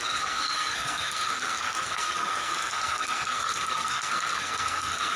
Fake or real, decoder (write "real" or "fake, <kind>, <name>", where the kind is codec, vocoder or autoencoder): fake, codec, SNAC